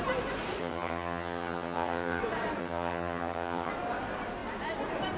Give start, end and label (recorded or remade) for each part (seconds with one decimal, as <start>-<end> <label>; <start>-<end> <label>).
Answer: 0.0-0.6 recorded; 0.6-2.2 remade; 2.2-2.6 recorded; 2.6-3.7 remade; 3.7-5.2 recorded